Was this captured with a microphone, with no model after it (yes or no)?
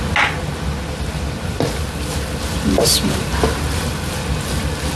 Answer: yes